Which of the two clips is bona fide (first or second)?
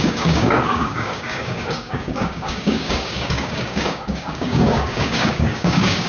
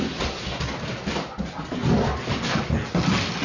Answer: second